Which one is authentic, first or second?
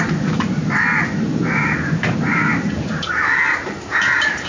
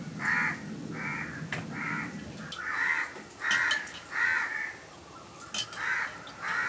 second